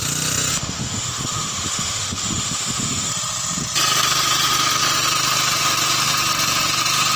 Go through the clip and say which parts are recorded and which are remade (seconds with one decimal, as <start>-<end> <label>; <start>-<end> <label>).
0.0-0.5 recorded; 0.5-3.1 remade; 3.1-7.2 recorded